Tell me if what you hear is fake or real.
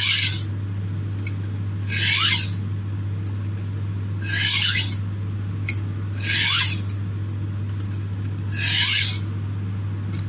real